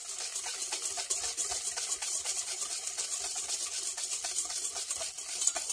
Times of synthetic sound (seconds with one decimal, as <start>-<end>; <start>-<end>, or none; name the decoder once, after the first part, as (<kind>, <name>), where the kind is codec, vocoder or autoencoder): 0.6-3.5 (vocoder, BigVGAN v2)